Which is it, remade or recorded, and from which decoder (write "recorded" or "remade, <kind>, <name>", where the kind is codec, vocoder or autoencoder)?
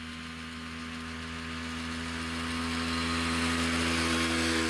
recorded